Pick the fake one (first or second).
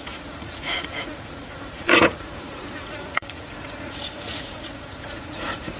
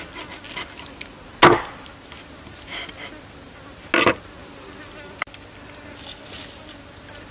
first